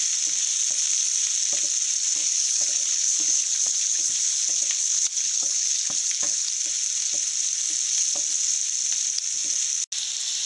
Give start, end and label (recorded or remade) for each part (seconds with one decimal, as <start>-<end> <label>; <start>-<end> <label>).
0.0-2.2 recorded; 2.2-6.5 remade; 6.5-10.5 recorded